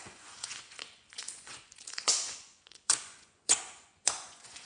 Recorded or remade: remade